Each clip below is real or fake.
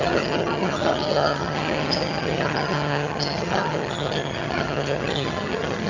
fake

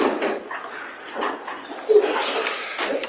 real